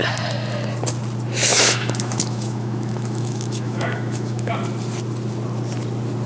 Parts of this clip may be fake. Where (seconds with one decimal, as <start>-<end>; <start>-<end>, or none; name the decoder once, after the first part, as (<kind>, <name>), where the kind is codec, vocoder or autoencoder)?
1.5-4.5 (autoencoder, DAC-VAE)